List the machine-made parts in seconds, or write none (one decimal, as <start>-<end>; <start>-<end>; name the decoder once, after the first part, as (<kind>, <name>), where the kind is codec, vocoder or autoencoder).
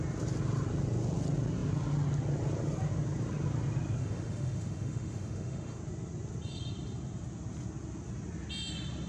4.0-5.8 (autoencoder, DAC-VAE)